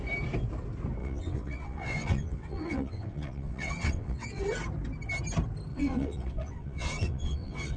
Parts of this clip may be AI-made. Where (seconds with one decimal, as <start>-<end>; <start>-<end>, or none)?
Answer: 1.0-4.4; 5.7-7.8